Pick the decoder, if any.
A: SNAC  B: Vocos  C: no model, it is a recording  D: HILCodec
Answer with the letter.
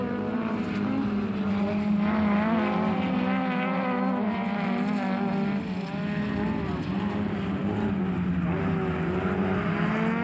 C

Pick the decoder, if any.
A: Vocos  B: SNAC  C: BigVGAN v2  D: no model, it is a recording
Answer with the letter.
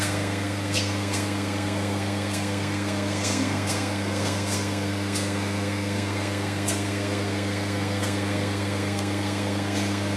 B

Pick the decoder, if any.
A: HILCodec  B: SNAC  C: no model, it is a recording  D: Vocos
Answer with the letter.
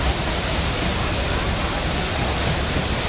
C